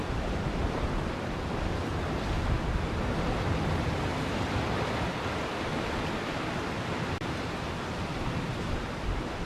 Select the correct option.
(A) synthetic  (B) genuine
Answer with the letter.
B